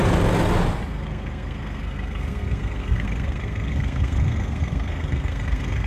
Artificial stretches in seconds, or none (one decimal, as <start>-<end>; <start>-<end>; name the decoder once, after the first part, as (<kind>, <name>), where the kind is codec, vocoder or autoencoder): 0.9-5.9 (codec, SNAC)